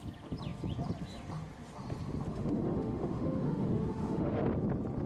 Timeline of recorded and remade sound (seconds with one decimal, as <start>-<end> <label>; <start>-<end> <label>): 0.0-2.3 recorded; 2.3-4.4 remade; 4.4-5.1 recorded